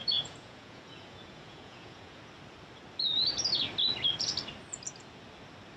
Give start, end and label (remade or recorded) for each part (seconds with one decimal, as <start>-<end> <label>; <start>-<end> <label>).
0.0-2.2 remade; 2.2-5.8 recorded